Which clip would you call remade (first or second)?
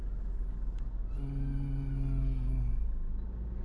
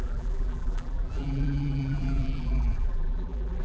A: second